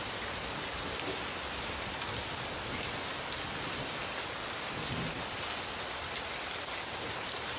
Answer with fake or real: real